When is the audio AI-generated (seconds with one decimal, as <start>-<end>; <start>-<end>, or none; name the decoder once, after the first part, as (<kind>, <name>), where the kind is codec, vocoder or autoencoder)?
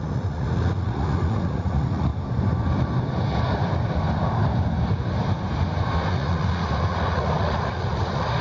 0.0-2.1 (vocoder, Vocos); 6.1-8.4